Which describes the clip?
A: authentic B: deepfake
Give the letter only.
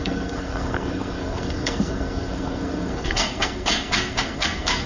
B